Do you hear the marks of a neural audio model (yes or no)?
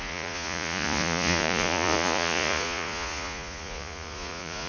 yes